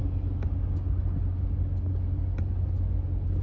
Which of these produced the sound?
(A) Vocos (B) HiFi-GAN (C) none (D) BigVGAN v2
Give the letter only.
C